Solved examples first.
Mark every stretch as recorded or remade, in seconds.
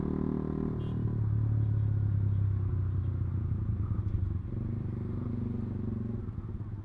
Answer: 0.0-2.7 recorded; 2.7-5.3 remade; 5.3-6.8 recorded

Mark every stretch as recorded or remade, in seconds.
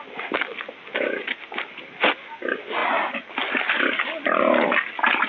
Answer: 0.0-5.3 recorded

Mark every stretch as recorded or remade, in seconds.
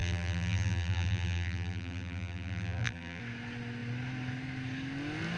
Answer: 0.0-3.2 remade; 3.2-5.4 recorded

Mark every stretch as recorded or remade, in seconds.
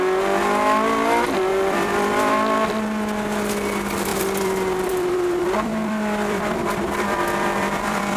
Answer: 0.0-1.5 recorded; 1.5-2.3 remade; 2.3-4.1 recorded; 4.1-8.2 remade